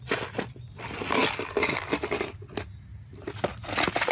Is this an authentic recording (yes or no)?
yes